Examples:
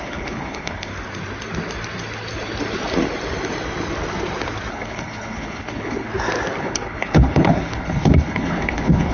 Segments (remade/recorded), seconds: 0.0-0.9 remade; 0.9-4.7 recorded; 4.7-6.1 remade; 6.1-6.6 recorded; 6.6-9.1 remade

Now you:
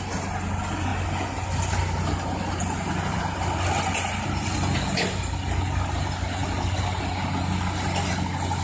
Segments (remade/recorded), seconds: 0.0-8.6 recorded

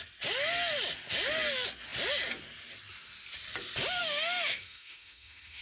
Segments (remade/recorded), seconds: 0.0-4.0 recorded; 4.0-5.6 remade